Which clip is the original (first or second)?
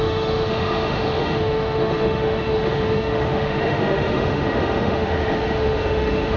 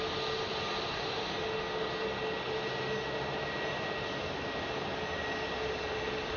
second